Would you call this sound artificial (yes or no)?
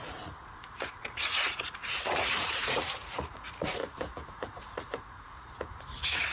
yes